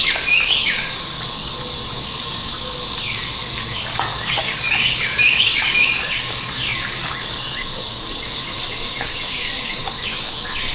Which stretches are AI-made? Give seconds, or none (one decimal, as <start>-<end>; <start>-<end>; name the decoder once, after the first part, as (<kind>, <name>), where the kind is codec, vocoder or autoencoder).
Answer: 0.0-10.7 (codec, DAC)